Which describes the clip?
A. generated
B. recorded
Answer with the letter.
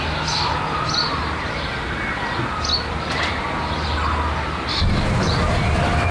B